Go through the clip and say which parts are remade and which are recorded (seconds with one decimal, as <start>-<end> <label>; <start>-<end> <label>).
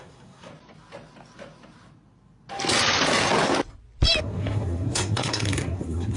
0.0-0.5 remade; 0.5-4.2 recorded; 4.2-6.2 remade